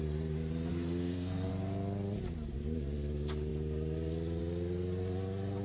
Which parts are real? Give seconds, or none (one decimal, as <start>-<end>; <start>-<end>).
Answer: 0.0-0.7; 1.5-5.6